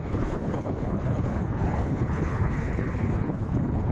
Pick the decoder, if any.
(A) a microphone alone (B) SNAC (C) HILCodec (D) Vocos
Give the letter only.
C